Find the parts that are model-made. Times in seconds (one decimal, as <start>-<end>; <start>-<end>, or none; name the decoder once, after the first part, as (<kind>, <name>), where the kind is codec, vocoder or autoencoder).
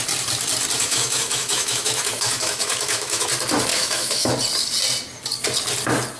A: 0.8-3.3 (autoencoder, DAC-VAE); 3.7-4.3